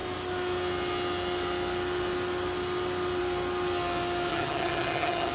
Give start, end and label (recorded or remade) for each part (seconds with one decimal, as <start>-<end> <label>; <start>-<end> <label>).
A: 0.0-4.3 recorded; 4.3-5.3 remade